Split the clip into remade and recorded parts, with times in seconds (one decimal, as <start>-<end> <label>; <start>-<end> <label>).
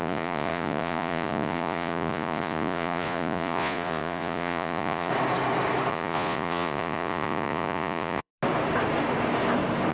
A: 0.0-5.1 remade; 5.1-5.9 recorded; 5.9-8.3 remade; 8.3-9.9 recorded